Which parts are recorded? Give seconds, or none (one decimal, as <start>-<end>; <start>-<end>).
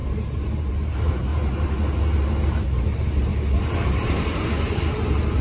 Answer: 1.3-2.8; 3.3-4.7